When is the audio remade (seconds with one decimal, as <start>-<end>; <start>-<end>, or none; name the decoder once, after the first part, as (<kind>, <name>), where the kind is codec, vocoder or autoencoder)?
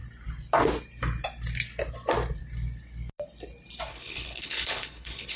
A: 3.9-5.4 (codec, HILCodec)